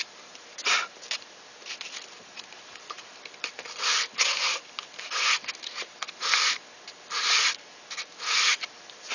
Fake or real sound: fake